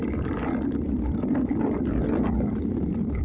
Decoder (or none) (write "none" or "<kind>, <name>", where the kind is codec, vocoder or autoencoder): none